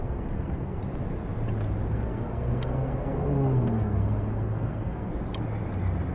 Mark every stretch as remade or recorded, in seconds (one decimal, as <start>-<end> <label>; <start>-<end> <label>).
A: 0.0-0.8 remade; 0.8-1.9 recorded; 1.9-5.1 remade; 5.1-6.1 recorded